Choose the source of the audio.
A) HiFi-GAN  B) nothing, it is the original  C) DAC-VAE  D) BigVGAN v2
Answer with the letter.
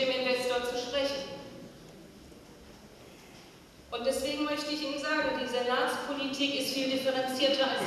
B